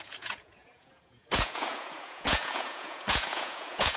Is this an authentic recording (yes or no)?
no